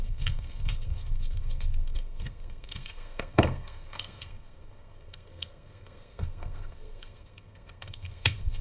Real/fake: fake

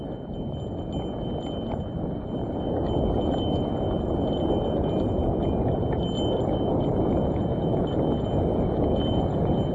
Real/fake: real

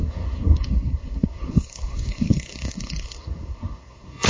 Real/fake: fake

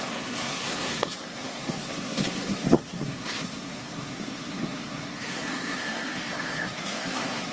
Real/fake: fake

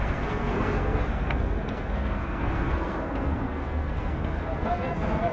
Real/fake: fake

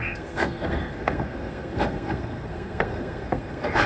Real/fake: fake